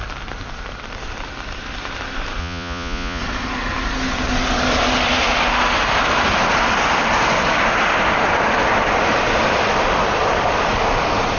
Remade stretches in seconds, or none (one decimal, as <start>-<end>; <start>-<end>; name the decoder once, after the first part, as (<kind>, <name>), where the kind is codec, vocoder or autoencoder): 2.4-3.2 (vocoder, Vocos)